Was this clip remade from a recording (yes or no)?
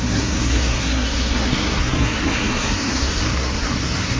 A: yes